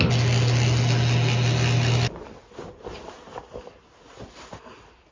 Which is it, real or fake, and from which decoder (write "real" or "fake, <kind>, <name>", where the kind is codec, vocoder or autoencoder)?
real